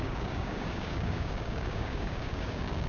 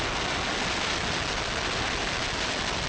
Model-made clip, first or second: first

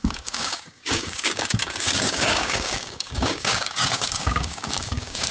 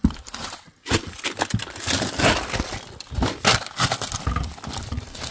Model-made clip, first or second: first